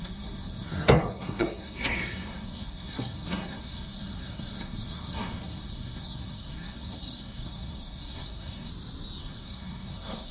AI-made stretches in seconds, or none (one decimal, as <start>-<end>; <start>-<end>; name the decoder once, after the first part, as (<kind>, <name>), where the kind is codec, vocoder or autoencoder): 0.0-8.7 (codec, SNAC); 9.2-10.3